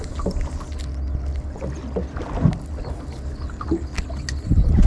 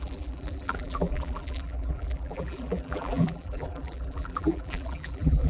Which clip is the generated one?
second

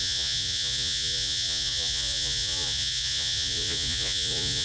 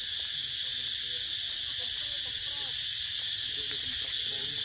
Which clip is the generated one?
first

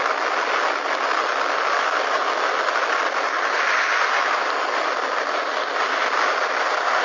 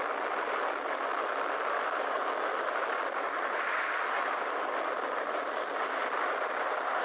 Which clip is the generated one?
second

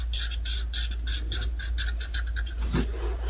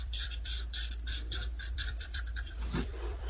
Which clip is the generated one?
second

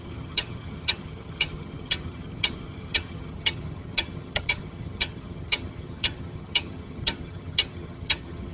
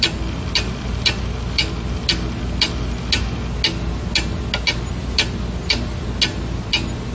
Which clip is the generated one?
first